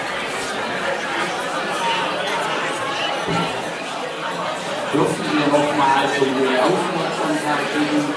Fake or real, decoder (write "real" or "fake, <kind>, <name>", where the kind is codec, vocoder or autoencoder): real